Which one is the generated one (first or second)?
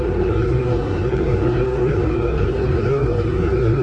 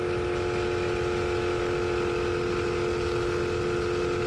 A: first